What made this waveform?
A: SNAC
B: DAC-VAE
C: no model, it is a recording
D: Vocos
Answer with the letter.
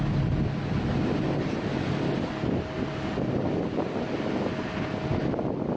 C